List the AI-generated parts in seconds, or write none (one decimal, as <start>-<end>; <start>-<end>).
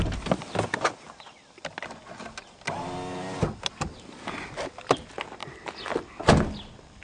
none